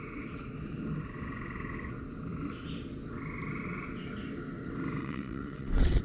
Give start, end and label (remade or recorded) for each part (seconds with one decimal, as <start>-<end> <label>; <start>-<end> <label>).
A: 0.0-5.0 recorded; 5.0-6.0 remade